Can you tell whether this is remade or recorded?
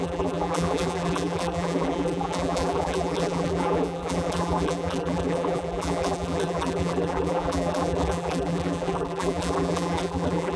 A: remade